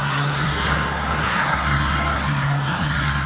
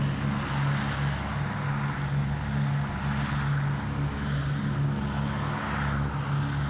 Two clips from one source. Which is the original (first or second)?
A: second